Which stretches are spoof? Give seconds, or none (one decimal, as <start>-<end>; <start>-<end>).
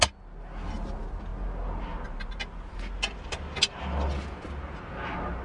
none